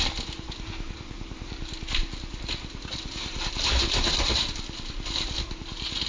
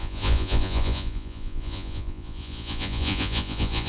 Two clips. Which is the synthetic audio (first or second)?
second